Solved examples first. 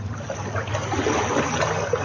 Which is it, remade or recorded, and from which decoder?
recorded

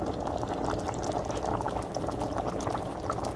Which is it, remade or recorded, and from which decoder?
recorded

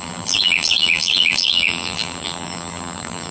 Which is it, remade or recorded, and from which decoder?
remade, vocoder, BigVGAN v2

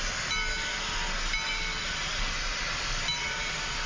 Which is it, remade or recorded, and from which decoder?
recorded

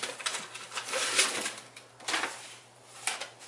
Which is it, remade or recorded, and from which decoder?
recorded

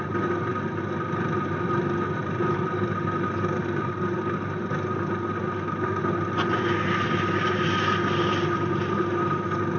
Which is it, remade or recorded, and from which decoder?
recorded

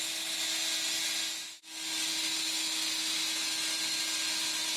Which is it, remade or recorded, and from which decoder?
recorded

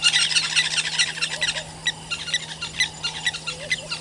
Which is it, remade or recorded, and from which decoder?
recorded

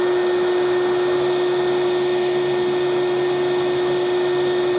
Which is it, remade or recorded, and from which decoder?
recorded